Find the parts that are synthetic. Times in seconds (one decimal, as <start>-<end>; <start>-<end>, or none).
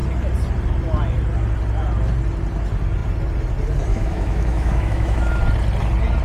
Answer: 3.9-5.4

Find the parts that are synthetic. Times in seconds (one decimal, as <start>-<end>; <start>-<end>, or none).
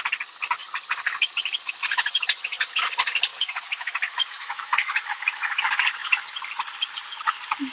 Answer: 3.3-5.6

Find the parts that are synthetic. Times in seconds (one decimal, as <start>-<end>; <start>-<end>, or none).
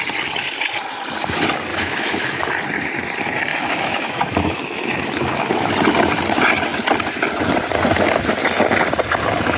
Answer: 1.7-2.5; 3.5-5.7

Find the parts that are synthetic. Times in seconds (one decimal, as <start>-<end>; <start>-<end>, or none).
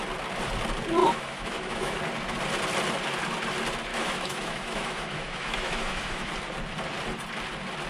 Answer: 1.0-2.0; 3.9-6.3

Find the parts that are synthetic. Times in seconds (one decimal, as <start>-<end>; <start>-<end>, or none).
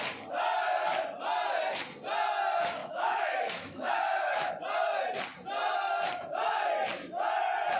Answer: 2.8-4.5